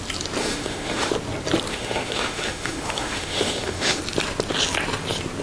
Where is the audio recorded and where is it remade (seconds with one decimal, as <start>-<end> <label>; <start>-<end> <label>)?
0.0-0.4 recorded; 0.4-1.1 remade; 1.1-1.7 recorded; 1.7-4.0 remade; 4.0-5.4 recorded